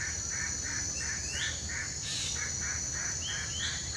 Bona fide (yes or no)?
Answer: yes